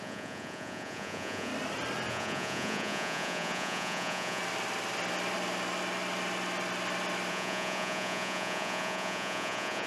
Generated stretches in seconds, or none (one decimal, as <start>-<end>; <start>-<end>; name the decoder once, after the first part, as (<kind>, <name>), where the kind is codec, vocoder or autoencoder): 0.0-1.5 (vocoder, Vocos); 2.1-4.4; 7.3-9.9

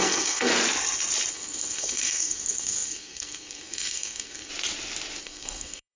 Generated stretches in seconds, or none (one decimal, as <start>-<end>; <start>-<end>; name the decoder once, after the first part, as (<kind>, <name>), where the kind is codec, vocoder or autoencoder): 0.0-0.5 (codec, SNAC); 1.3-4.5; 5.2-6.0

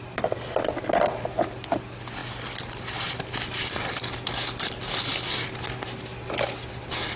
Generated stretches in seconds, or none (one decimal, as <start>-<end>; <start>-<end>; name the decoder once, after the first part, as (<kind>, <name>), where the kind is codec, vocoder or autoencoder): none